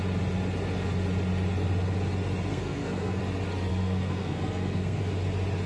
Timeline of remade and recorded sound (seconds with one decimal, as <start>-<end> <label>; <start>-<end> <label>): 0.0-2.5 recorded; 2.5-3.2 remade; 3.2-3.7 recorded; 3.7-5.0 remade; 5.0-5.7 recorded